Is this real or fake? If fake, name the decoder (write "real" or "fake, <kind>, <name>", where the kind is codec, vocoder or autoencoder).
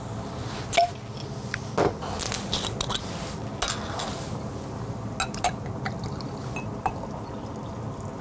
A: real